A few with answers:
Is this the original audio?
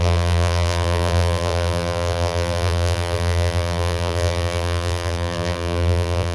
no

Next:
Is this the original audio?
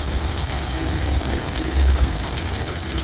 no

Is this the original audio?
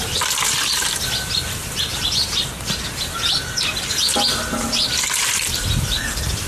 yes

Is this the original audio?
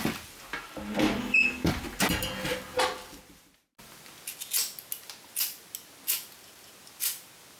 yes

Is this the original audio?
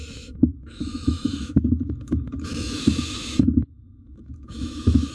no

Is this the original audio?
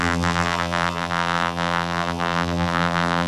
no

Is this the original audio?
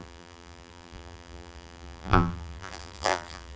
no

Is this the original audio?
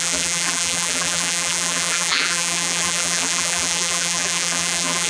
no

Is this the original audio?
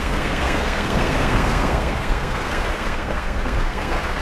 no